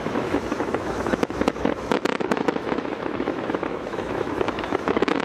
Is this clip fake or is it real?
fake